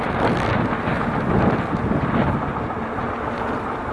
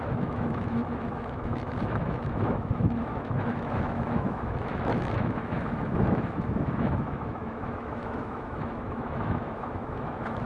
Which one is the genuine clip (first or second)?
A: first